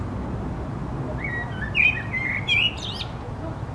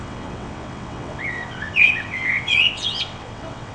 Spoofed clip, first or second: second